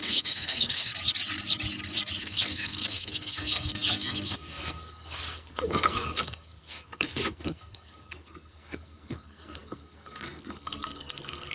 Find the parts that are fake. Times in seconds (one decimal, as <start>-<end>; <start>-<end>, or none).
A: 0.0-0.9; 2.2-11.5